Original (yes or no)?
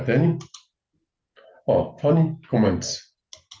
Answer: yes